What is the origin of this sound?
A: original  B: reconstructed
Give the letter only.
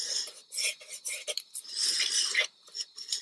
A